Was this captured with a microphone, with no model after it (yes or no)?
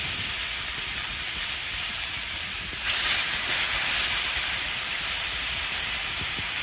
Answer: no